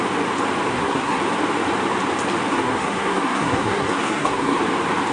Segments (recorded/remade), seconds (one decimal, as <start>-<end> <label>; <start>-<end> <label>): 0.0-0.7 recorded; 0.7-1.2 remade; 1.2-2.5 recorded; 2.5-4.6 remade; 4.6-5.1 recorded